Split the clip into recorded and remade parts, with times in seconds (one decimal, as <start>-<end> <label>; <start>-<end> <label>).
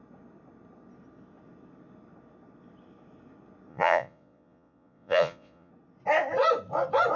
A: 0.0-3.7 recorded; 3.7-5.7 remade; 5.7-7.2 recorded